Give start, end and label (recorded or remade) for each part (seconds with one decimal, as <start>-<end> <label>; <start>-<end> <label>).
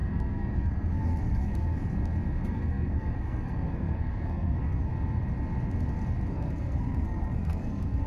0.0-1.8 remade; 1.8-2.4 recorded; 2.4-4.9 remade; 4.9-6.3 recorded; 6.3-8.1 remade